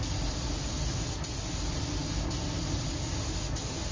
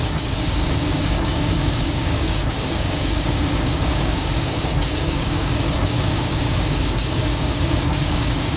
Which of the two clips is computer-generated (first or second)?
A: second